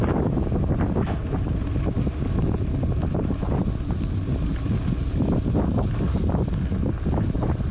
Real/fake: real